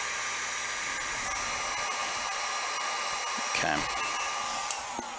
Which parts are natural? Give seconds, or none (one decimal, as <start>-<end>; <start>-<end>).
0.0-5.2